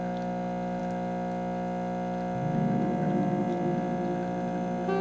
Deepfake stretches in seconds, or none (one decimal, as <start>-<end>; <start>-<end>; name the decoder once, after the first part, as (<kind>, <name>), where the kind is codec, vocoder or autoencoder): none

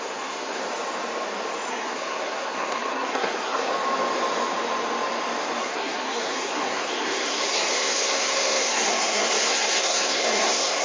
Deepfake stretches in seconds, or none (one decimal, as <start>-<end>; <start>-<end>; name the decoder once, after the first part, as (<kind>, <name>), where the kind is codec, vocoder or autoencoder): 0.0-0.6 (codec, SNAC); 1.7-3.7; 5.6-10.8